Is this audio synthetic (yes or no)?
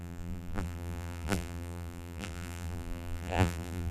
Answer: yes